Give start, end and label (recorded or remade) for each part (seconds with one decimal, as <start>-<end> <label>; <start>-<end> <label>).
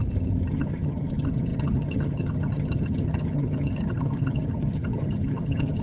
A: 0.0-0.5 recorded; 0.5-5.8 remade